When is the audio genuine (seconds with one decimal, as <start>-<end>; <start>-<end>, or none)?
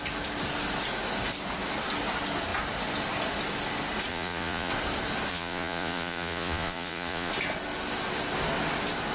0.0-4.1; 4.7-5.3; 7.3-9.1